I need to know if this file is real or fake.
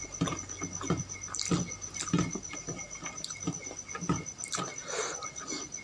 real